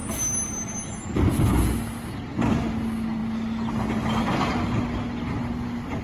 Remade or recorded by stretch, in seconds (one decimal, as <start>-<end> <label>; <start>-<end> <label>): 0.0-6.0 recorded